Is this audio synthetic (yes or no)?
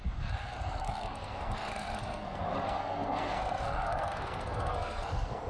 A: yes